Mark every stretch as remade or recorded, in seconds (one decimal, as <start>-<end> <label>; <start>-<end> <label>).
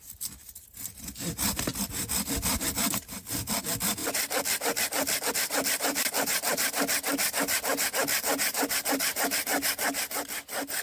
0.0-10.8 recorded